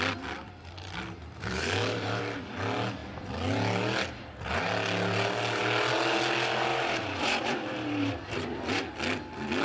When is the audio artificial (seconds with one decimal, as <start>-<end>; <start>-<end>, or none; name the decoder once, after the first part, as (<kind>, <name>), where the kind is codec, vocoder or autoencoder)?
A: 1.2-2.2 (vocoder, BigVGAN v2); 6.7-8.8